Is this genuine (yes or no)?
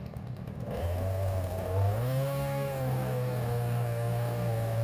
no